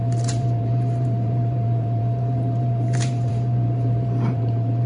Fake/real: fake